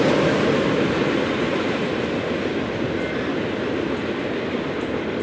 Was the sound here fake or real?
real